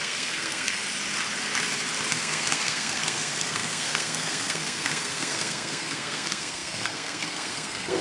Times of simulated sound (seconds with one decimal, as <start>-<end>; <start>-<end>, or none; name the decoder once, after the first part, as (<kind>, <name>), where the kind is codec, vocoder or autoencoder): 0.0-0.8 (codec, SNAC); 2.1-8.0